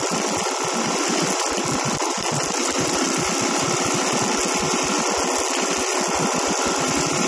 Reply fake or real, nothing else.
real